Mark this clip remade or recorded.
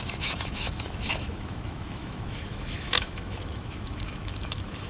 remade